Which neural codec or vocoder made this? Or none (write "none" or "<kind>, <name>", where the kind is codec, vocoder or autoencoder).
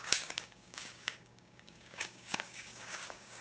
codec, DAC